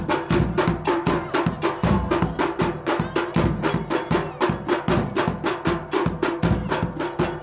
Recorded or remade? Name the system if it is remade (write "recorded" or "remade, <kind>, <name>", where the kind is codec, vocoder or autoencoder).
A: recorded